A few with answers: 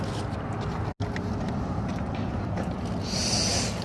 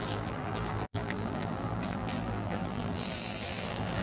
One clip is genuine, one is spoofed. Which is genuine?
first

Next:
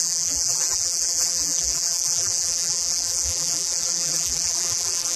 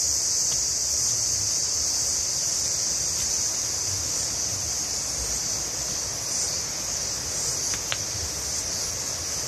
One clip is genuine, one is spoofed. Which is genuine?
second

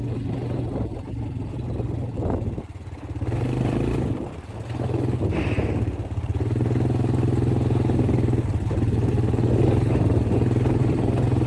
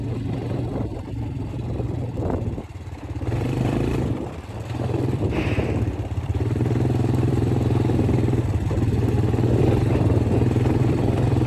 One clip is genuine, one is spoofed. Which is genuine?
first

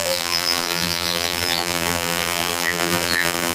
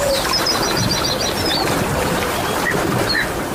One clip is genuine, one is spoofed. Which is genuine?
second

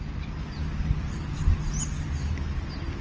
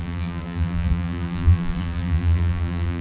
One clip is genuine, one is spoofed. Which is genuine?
first